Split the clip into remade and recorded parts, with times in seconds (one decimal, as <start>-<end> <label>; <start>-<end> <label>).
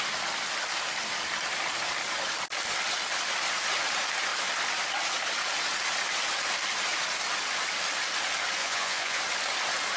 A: 0.0-8.6 recorded; 8.6-9.2 remade; 9.2-10.0 recorded